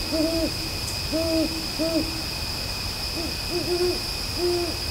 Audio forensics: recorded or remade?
recorded